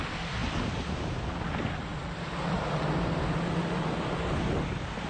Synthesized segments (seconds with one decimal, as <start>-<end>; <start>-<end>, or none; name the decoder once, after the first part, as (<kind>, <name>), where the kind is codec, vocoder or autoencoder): none